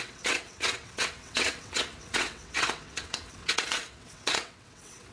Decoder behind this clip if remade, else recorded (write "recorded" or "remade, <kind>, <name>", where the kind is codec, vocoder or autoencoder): remade, vocoder, WaveNeXt